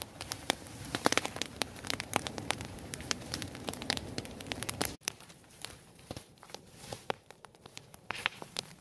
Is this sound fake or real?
fake